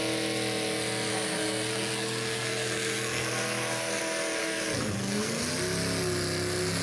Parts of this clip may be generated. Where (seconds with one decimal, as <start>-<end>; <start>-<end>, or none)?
1.1-4.0; 4.4-5.4